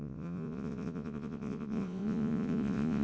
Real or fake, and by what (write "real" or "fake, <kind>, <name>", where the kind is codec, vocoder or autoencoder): fake, vocoder, Vocos